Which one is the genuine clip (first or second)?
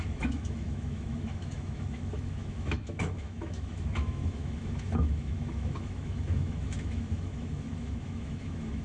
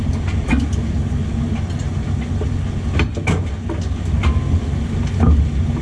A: second